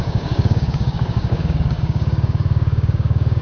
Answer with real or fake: fake